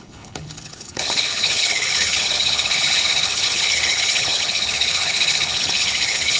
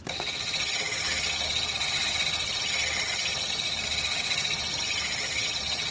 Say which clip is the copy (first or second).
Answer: first